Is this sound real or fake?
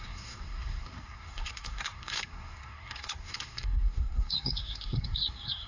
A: fake